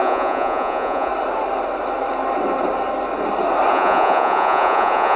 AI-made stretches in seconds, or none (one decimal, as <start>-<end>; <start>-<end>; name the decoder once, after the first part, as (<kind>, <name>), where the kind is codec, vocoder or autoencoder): 0.0-1.1 (vocoder, Vocos); 3.7-5.2